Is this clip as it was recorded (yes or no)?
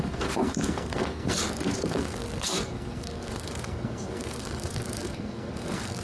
no